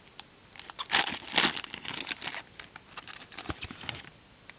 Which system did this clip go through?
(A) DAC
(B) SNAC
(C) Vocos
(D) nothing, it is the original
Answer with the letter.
D